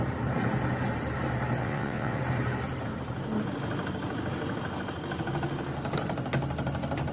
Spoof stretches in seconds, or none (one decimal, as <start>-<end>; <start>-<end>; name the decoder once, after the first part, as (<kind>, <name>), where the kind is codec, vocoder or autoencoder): 1.6-2.2 (vocoder, WaveNeXt)